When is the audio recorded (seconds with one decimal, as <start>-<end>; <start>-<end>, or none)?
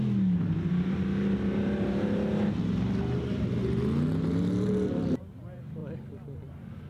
0.0-5.8; 6.5-6.9